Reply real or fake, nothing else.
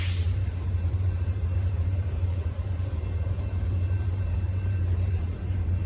fake